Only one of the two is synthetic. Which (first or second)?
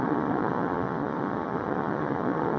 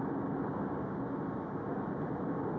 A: first